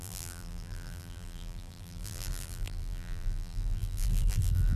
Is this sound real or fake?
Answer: fake